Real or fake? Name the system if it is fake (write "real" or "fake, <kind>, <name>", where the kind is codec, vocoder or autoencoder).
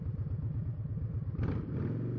real